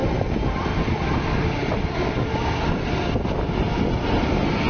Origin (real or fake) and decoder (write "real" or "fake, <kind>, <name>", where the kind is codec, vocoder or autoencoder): real